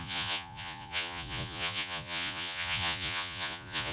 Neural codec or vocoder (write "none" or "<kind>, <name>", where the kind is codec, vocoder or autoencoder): vocoder, Vocos